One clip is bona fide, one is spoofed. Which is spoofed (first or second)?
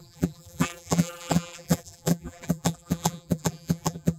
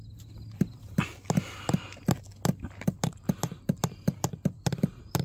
first